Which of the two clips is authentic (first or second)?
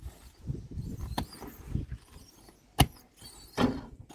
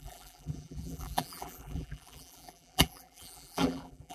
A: first